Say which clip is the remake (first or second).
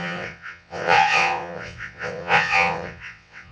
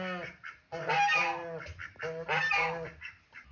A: first